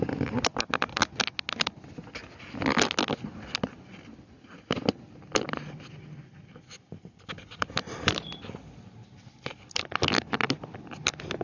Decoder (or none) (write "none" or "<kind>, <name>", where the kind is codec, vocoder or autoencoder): none